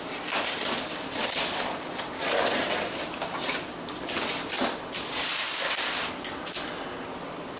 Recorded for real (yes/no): yes